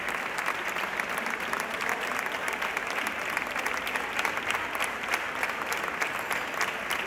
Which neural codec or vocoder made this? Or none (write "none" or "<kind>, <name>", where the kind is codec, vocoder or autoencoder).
none